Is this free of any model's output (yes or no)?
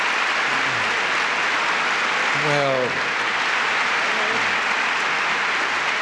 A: yes